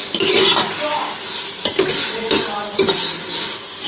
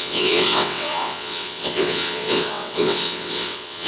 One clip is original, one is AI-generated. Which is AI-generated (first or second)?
second